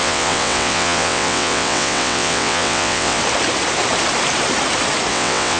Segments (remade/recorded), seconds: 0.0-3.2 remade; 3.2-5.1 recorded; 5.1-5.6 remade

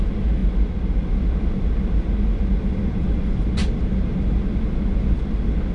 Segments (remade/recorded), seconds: 0.0-5.7 recorded

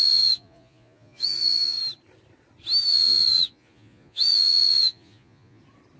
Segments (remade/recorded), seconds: 0.0-1.8 remade; 1.8-2.9 recorded; 2.9-5.6 remade; 5.6-6.0 recorded

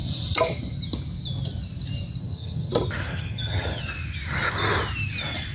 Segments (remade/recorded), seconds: 0.0-2.2 recorded; 2.2-2.7 remade; 2.7-3.1 recorded; 3.1-3.8 remade; 3.8-5.5 recorded

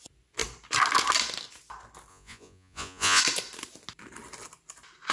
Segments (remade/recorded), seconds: 0.0-2.1 recorded; 2.1-3.2 remade; 3.2-5.1 recorded

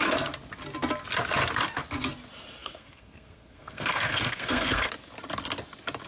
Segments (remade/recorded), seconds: 0.0-2.6 recorded; 2.6-4.9 remade; 4.9-6.1 recorded

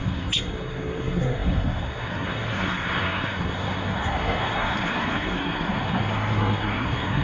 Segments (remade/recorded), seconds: 0.0-7.2 remade